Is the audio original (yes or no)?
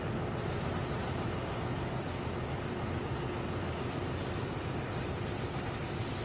yes